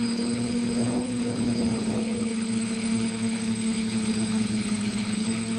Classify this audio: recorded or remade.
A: remade